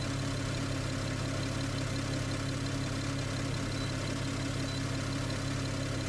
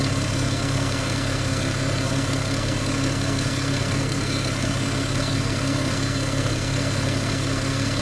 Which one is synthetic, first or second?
second